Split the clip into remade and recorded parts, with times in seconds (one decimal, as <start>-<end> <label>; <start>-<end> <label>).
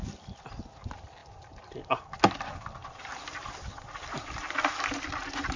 0.0-1.2 recorded; 1.2-2.0 remade; 2.0-5.6 recorded